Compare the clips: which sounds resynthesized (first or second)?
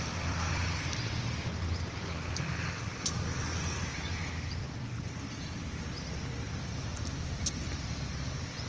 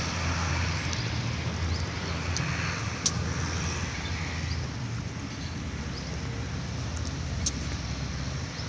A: first